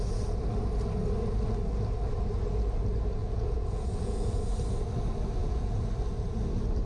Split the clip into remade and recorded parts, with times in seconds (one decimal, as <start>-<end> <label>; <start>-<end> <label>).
0.0-3.2 recorded; 3.2-4.4 remade; 4.4-5.4 recorded; 5.4-5.9 remade; 5.9-6.9 recorded